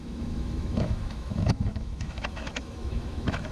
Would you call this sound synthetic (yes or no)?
yes